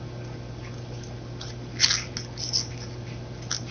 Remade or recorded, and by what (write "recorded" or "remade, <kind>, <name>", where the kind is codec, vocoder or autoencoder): recorded